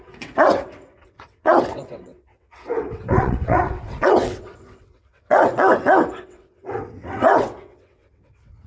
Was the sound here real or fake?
fake